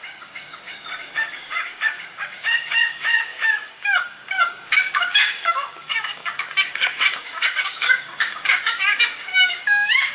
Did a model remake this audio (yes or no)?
yes